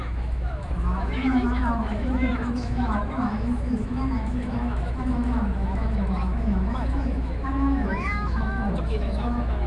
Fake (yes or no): yes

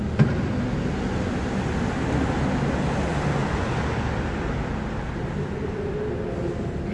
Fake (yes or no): no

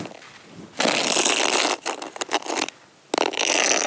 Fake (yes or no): no